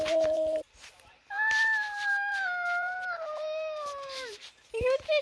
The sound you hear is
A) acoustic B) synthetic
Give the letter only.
B